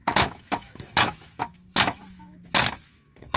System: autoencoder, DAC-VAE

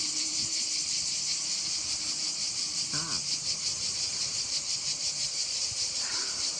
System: vocoder, BigVGAN v2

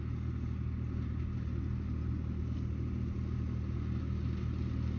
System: none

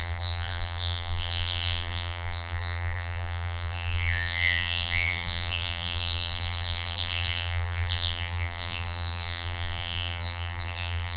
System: vocoder, BigVGAN v2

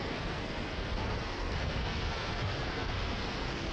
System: codec, SNAC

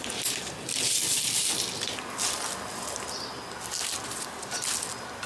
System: none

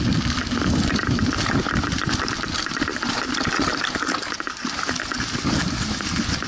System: none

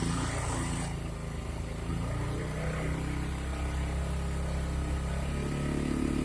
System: none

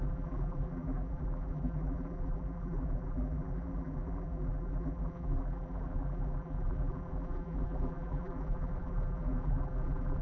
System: vocoder, BigVGAN v2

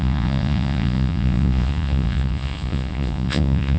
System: vocoder, Vocos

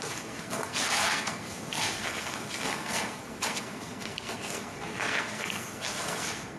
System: codec, SNAC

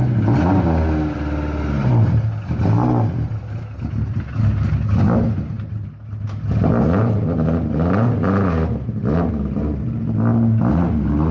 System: none